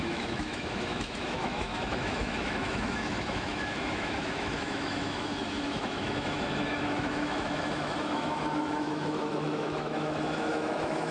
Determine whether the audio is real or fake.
fake